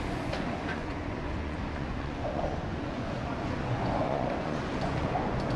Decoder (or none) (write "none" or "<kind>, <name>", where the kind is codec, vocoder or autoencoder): vocoder, Vocos